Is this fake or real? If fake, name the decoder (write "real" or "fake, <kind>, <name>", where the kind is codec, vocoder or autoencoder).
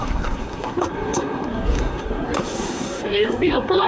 fake, codec, SNAC